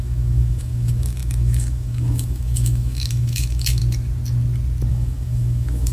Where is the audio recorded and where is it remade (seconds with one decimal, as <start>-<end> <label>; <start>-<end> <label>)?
0.0-3.8 remade; 3.8-4.9 recorded; 4.9-5.9 remade